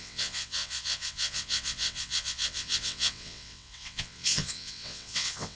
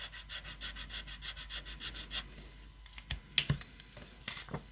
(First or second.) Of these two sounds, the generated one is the first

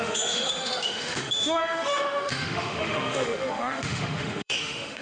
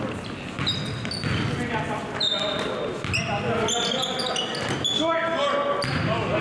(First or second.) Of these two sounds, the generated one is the first